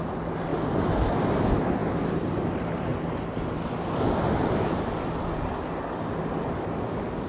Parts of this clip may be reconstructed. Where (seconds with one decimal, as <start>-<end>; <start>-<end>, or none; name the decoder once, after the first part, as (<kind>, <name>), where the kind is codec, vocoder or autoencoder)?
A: 1.8-2.5 (vocoder, BigVGAN v2); 2.9-5.9